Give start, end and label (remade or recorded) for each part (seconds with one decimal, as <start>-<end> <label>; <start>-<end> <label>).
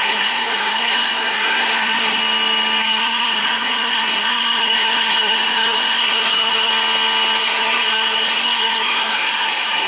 0.0-2.2 remade; 2.2-2.8 recorded; 2.8-6.7 remade; 6.7-7.4 recorded; 7.4-9.9 remade